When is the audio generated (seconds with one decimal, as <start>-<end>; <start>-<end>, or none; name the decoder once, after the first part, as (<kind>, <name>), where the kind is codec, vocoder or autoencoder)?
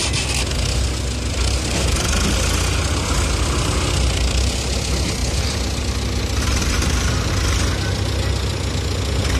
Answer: 5.2-5.8 (vocoder, BigVGAN v2); 6.6-7.3